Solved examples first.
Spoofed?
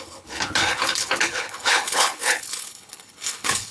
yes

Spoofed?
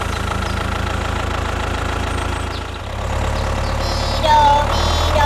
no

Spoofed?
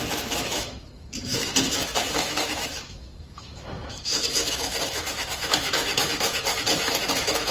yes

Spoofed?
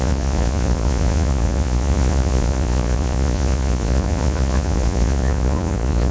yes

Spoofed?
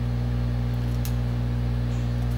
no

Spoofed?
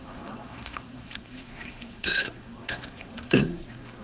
yes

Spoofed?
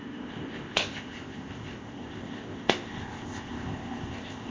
yes